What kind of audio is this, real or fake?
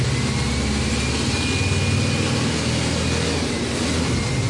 real